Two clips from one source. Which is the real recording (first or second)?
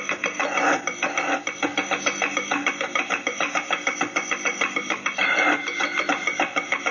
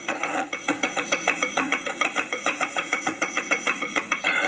first